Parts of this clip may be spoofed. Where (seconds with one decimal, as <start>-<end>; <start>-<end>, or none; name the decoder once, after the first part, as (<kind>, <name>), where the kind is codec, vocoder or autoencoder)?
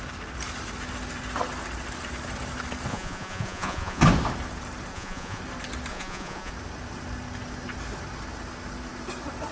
2.9-4.0 (vocoder, Vocos); 4.9-5.4; 5.9-6.5